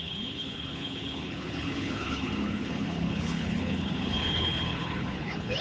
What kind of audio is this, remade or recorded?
remade